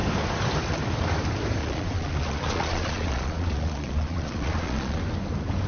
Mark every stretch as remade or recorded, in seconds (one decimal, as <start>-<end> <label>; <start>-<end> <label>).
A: 0.0-1.6 recorded; 1.6-5.0 remade; 5.0-5.7 recorded